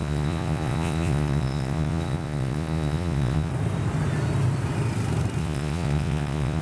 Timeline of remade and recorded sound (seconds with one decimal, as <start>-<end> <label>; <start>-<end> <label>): 0.0-3.5 remade; 3.5-5.4 recorded; 5.4-6.6 remade